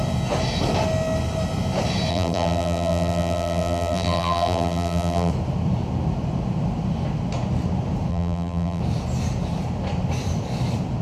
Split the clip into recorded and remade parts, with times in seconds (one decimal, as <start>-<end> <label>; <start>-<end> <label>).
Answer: 0.0-2.1 recorded; 2.1-5.3 remade; 5.3-8.1 recorded; 8.1-8.8 remade; 8.8-11.0 recorded